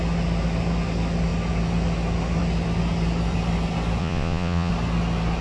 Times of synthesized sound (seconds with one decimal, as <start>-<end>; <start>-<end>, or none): 4.0-4.7